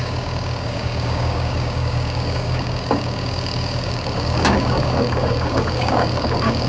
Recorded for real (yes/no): no